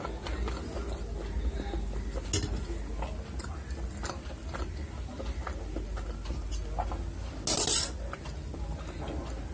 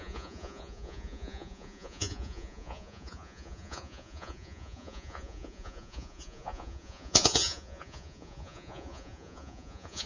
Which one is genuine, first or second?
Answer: first